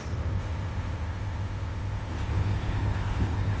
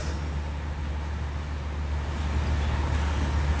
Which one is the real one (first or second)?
second